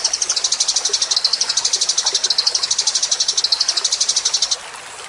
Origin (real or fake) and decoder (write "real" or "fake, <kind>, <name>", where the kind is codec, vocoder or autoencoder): real